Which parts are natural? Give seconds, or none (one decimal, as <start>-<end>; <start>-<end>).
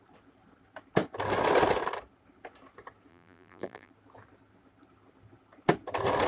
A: 0.0-3.1; 3.9-6.3